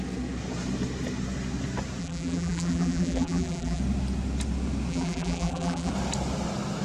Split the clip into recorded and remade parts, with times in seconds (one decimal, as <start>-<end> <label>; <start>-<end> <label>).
0.0-2.0 recorded; 2.0-3.8 remade; 3.8-4.9 recorded; 4.9-5.9 remade; 5.9-6.8 recorded